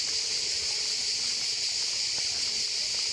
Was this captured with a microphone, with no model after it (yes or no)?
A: yes